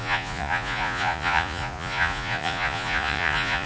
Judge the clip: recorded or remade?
remade